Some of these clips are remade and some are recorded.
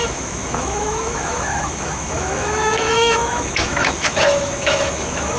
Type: remade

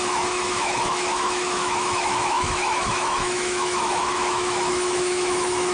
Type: remade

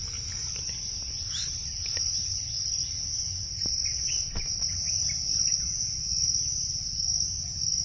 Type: recorded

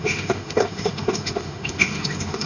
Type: remade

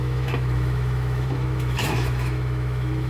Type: remade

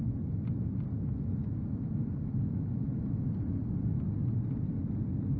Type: recorded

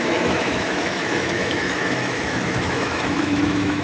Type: remade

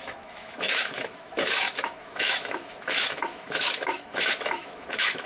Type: remade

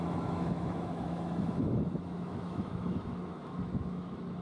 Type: remade